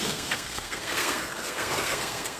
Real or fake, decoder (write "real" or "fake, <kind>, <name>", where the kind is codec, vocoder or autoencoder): fake, codec, SNAC